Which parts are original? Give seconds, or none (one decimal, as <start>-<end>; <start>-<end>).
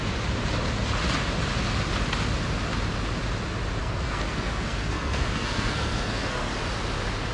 0.0-3.8; 6.5-7.3